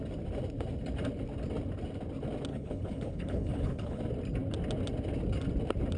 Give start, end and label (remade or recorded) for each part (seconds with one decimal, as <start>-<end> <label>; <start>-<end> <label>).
0.0-2.5 recorded; 2.5-4.0 remade; 4.0-6.0 recorded